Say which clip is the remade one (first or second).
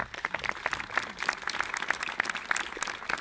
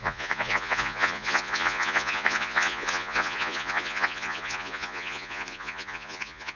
second